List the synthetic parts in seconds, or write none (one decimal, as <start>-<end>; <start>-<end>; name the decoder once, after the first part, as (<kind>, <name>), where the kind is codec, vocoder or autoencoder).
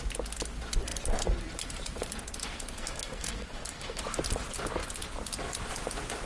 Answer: 2.4-4.0 (codec, SNAC)